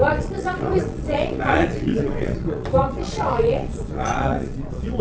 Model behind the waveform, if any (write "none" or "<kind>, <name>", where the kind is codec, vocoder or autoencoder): vocoder, Vocos